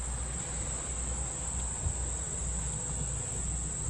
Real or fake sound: real